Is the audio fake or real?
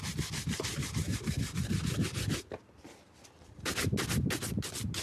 fake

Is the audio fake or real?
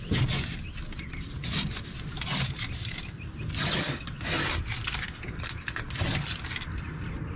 real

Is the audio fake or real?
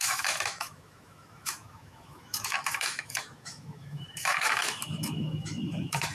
fake